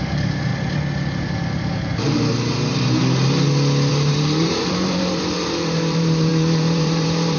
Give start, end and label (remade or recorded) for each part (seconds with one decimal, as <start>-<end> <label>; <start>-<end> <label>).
0.0-0.5 remade; 0.5-3.9 recorded; 3.9-7.4 remade